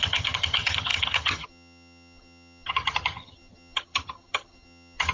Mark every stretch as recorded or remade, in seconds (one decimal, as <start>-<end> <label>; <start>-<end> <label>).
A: 0.0-5.1 remade